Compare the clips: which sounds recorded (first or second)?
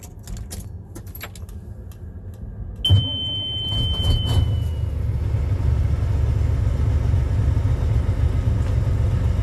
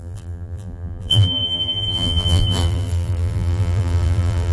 first